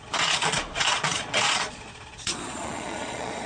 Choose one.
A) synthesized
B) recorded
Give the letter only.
A